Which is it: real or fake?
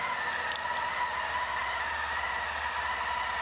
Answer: real